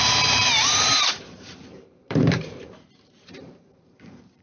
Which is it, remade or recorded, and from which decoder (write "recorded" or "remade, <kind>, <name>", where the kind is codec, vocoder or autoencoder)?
remade, vocoder, BigVGAN v2